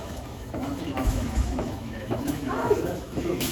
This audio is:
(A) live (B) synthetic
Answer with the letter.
B